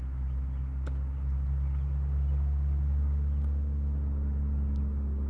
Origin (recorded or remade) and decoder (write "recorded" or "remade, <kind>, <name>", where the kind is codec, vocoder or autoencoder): recorded